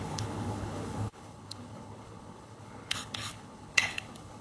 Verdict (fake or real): fake